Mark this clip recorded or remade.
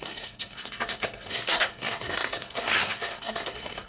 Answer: remade